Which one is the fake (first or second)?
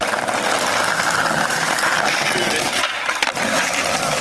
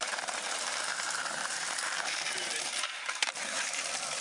second